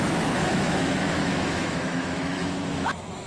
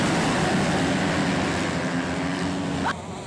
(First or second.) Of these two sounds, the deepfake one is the first